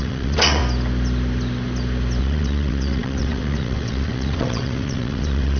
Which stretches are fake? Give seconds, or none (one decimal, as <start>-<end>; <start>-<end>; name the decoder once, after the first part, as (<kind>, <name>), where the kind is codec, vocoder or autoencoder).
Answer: 0.0-0.6 (vocoder, WaveNeXt); 2.2-5.6